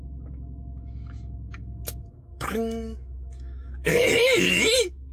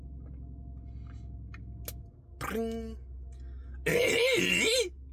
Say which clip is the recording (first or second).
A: second